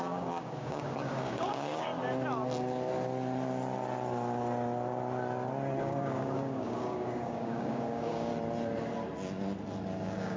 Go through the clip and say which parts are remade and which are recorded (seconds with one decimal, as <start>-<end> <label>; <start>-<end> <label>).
0.0-1.9 remade; 1.9-5.8 recorded; 5.8-8.3 remade; 8.3-10.0 recorded; 10.0-10.4 remade

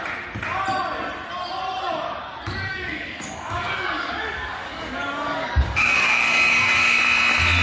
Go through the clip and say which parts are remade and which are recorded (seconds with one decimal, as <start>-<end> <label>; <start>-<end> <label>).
0.0-2.7 recorded; 2.7-7.0 remade; 7.0-7.6 recorded

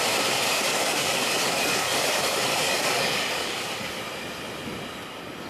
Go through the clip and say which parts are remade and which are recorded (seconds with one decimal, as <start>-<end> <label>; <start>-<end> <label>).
0.0-0.7 recorded; 0.7-4.0 remade; 4.0-5.5 recorded

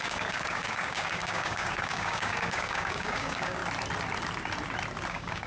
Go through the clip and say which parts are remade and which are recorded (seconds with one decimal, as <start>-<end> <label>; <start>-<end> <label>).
0.0-3.6 remade; 3.6-5.1 recorded; 5.1-5.5 remade

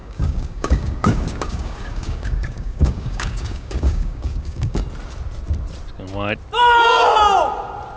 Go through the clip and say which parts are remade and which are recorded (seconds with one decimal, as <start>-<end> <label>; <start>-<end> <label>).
0.0-4.8 remade; 4.8-8.0 recorded